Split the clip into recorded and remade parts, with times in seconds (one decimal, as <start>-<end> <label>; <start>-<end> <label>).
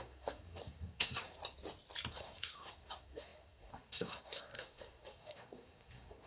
0.0-1.4 remade; 1.4-2.1 recorded; 2.1-6.3 remade